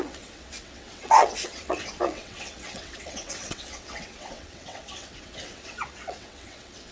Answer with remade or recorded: remade